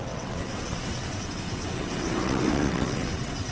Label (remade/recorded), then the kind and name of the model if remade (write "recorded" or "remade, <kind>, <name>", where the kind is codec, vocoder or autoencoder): remade, vocoder, WaveNeXt